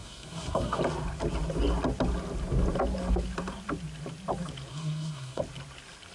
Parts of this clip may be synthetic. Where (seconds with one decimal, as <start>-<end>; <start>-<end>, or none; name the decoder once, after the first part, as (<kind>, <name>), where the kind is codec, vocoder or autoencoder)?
0.0-0.8 (codec, SNAC); 4.7-5.4